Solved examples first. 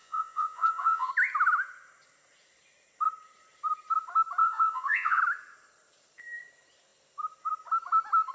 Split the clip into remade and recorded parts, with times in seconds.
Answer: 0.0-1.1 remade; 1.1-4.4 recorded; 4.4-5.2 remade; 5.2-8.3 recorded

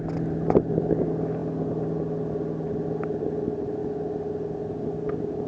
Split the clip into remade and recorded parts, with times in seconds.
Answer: 0.0-5.5 recorded

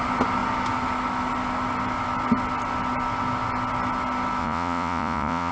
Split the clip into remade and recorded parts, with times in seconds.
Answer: 0.0-4.4 recorded; 4.4-5.5 remade

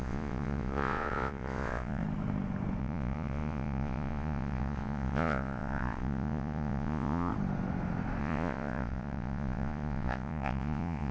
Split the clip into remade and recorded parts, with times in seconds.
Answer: 0.0-2.0 remade; 2.0-2.8 recorded; 2.8-7.3 remade; 7.3-8.2 recorded; 8.2-11.1 remade

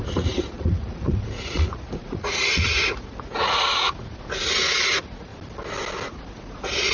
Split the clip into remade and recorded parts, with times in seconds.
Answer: 0.0-5.3 remade; 5.3-6.1 recorded; 6.1-6.9 remade

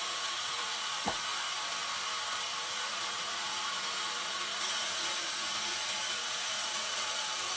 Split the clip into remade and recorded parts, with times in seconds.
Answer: 0.0-1.3 remade; 1.3-2.6 recorded; 2.6-7.6 remade